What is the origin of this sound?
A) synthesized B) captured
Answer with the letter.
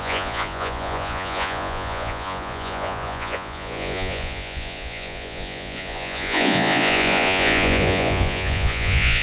A